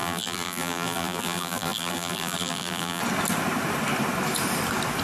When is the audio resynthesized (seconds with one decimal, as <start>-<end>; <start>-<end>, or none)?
0.0-3.0